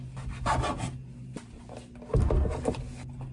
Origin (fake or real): real